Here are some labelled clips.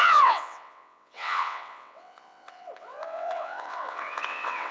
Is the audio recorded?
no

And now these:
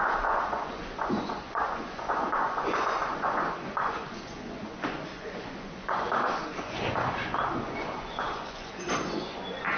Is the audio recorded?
no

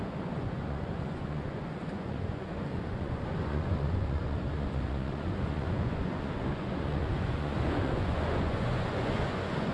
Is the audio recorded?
no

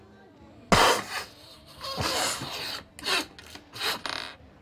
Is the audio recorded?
yes